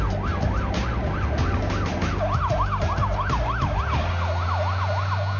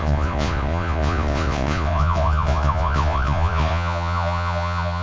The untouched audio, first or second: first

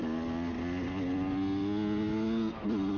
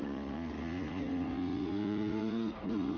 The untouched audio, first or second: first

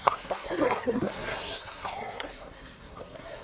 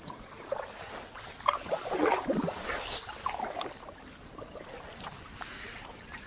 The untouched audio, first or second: second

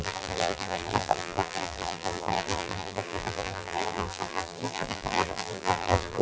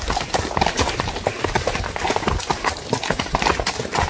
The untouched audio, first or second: second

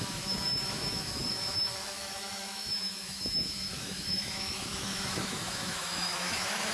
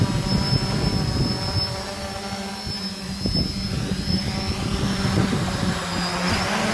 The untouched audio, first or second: second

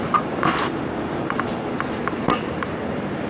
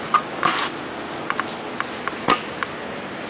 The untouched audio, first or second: second